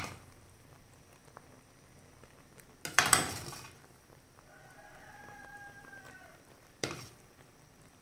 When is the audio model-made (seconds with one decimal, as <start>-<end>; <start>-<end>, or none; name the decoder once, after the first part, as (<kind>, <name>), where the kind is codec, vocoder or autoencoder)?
0.0-1.2 (vocoder, BigVGAN v2); 2.9-8.0